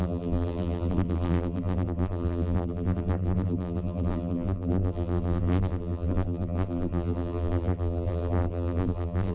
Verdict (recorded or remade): remade